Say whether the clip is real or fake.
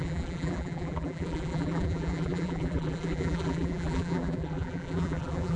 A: fake